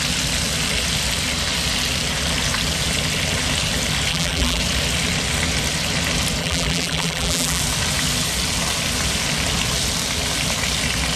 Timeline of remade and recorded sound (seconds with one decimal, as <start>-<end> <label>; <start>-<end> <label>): 0.0-4.1 recorded; 4.1-4.6 remade; 4.6-6.4 recorded; 6.4-7.6 remade; 7.6-11.2 recorded